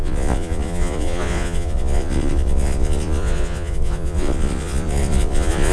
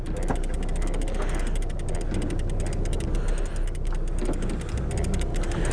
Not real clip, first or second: first